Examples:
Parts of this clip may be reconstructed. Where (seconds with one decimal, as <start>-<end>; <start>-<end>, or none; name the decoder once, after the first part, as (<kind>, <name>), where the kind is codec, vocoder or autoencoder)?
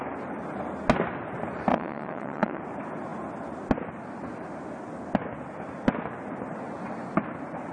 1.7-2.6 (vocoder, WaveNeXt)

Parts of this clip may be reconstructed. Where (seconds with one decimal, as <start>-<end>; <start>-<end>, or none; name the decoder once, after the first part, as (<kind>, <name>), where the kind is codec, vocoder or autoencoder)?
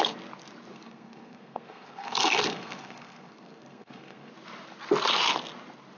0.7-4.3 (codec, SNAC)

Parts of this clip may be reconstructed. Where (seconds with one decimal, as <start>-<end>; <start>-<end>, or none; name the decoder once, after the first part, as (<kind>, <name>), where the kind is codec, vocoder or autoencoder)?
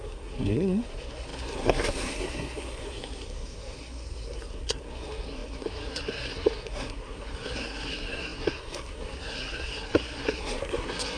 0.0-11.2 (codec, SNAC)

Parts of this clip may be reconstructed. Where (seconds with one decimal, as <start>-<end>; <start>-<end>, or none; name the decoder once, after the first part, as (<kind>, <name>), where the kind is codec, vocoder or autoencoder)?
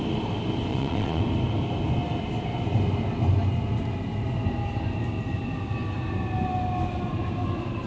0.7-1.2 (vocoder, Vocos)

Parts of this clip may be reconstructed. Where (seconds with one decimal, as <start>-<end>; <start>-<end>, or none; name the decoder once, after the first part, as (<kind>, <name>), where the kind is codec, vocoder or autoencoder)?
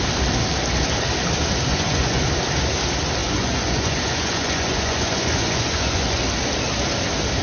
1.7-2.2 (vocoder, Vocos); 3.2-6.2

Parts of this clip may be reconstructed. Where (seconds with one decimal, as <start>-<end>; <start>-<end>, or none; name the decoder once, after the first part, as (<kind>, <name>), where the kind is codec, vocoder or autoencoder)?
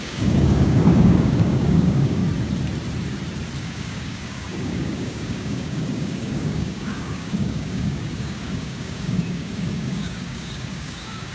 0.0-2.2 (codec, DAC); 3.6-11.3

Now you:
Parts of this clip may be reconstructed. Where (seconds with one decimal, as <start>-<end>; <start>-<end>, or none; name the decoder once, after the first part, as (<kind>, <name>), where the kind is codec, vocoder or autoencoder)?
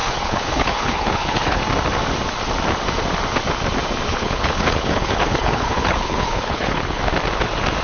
0.0-1.6 (codec, HILCodec); 4.1-7.0